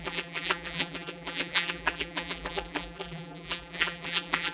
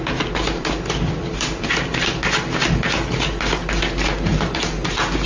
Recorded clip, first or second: second